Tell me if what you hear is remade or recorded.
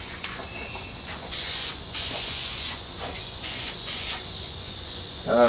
remade